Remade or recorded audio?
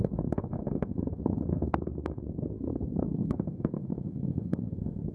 remade